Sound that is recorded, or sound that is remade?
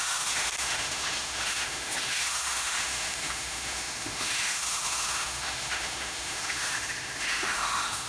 remade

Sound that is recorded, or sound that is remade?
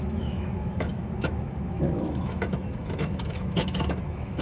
remade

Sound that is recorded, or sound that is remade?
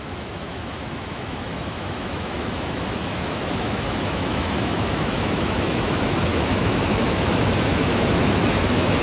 remade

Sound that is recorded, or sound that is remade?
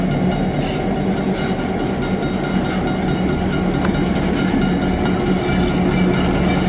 recorded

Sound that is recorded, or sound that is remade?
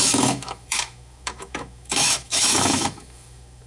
remade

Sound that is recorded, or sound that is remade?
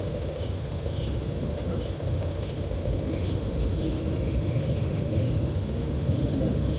remade